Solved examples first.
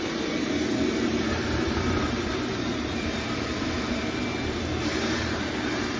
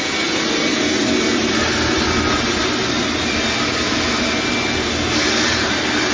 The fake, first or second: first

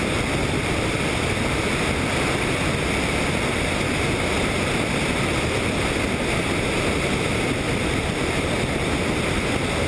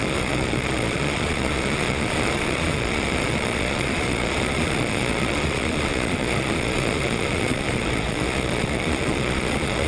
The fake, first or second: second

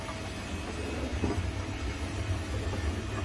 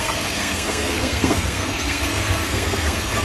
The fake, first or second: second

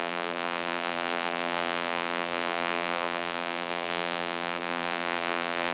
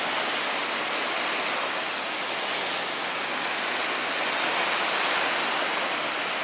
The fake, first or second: first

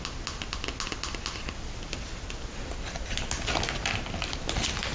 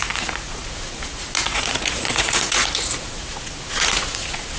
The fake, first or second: second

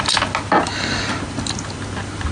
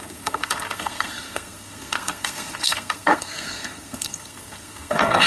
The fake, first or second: second